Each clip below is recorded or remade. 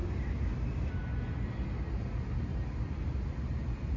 recorded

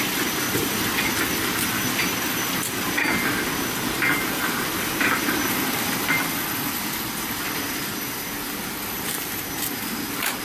recorded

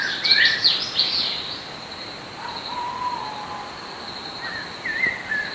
recorded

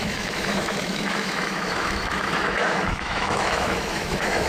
remade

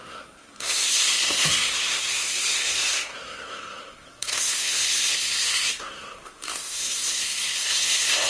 remade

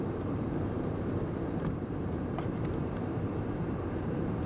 remade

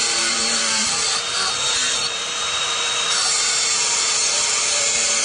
remade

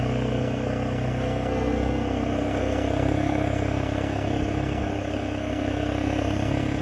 remade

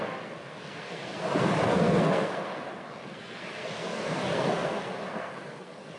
remade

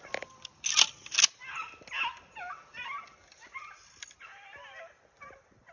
recorded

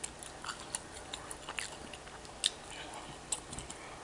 recorded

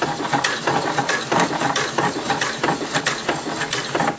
recorded